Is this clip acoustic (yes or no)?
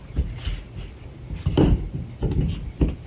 yes